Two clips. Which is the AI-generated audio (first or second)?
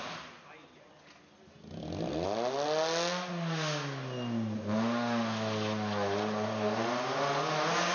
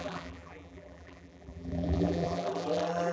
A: second